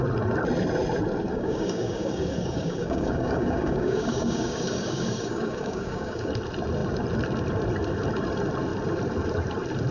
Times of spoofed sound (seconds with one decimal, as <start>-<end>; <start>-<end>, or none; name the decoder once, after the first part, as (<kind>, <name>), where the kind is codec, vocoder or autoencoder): 1.3-6.3 (codec, DAC)